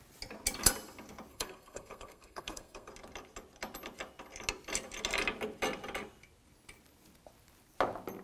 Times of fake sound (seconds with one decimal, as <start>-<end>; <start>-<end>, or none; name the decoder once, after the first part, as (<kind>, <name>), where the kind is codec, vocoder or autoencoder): 1.3-2.9 (codec, SNAC)